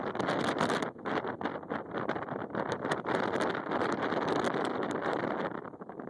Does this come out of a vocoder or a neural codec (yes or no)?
no